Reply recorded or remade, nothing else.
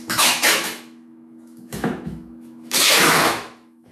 remade